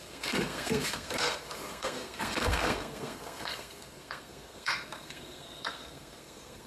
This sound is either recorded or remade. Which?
remade